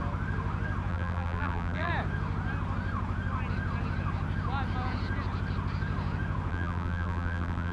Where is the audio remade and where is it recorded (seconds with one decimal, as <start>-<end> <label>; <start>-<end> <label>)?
0.0-0.9 recorded; 0.9-1.9 remade; 1.9-6.5 recorded; 6.5-7.7 remade